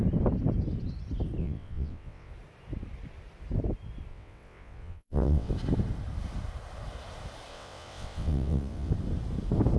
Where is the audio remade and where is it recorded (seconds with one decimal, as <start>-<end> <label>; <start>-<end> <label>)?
0.0-1.4 recorded; 1.4-2.3 remade; 2.3-4.1 recorded; 4.1-5.5 remade; 5.5-7.5 recorded; 7.5-8.9 remade; 8.9-9.8 recorded